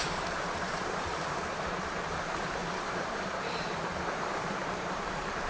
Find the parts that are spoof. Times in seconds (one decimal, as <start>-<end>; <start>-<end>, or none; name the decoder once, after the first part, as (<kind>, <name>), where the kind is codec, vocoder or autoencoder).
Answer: 0.0-5.5 (vocoder, BigVGAN v2)